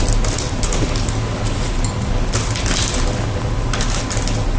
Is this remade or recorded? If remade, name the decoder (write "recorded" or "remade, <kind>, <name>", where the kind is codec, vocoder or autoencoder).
recorded